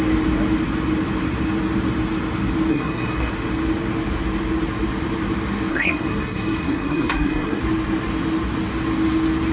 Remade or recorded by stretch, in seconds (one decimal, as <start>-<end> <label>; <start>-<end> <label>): 0.0-2.7 recorded; 2.7-3.3 remade; 3.3-5.7 recorded; 5.7-7.6 remade; 7.6-9.5 recorded